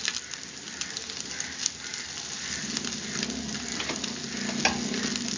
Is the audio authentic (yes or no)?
yes